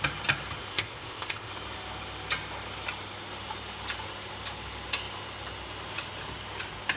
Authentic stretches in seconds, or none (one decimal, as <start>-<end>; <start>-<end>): 0.0-0.7; 1.5-7.0